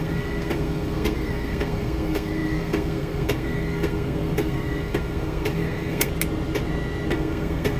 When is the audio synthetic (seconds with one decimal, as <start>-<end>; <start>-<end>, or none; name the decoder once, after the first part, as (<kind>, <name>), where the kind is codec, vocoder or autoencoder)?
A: 0.0-6.1 (codec, SNAC); 7.1-7.8